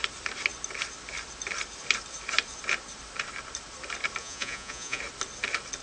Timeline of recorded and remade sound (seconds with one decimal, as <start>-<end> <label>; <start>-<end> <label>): 0.0-4.2 recorded; 4.2-5.0 remade; 5.0-5.8 recorded

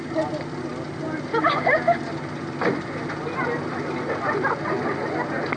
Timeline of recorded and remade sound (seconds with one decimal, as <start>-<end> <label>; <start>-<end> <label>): 0.0-5.6 recorded

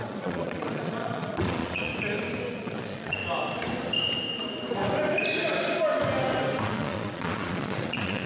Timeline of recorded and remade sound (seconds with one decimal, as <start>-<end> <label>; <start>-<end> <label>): 0.0-1.9 remade; 1.9-2.5 recorded; 2.5-3.2 remade; 3.2-6.6 recorded; 6.6-8.3 remade

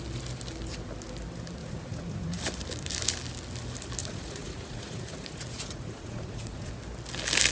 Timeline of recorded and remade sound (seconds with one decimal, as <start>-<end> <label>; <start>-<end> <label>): 0.0-1.6 recorded; 1.6-2.4 remade; 2.4-4.0 recorded; 4.0-6.7 remade; 6.7-7.5 recorded

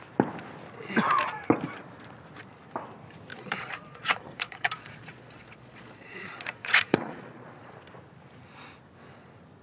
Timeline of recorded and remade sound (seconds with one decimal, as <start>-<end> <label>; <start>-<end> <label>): 0.0-3.3 recorded; 3.3-7.7 remade; 7.7-9.6 recorded

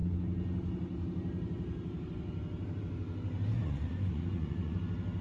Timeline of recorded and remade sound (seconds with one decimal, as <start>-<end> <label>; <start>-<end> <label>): 0.0-3.6 recorded; 3.6-4.8 remade; 4.8-5.2 recorded

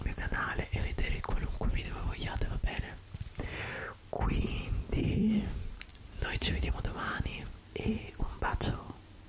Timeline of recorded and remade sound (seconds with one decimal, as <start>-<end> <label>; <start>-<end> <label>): 0.0-5.9 recorded; 5.9-6.8 remade; 6.8-9.3 recorded

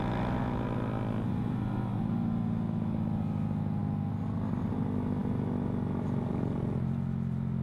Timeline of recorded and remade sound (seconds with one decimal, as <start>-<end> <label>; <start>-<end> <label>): 0.0-7.6 recorded